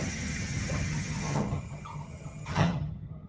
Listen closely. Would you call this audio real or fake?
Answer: fake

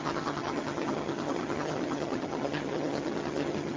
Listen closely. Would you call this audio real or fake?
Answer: fake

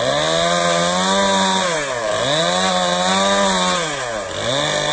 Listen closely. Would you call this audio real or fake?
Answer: real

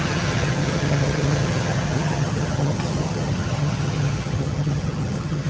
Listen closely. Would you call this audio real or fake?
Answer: fake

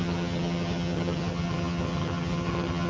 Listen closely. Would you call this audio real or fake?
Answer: fake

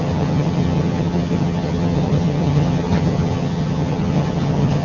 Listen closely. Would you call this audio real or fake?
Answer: fake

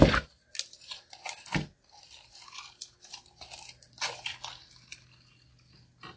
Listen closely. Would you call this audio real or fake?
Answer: real